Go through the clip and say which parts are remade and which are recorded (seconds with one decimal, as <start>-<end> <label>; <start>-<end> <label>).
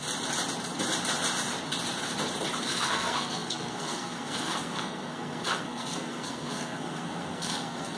0.0-2.6 recorded; 2.6-8.0 remade